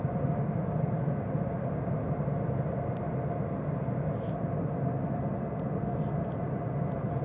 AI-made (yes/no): no